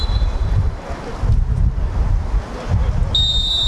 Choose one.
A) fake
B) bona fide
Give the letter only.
B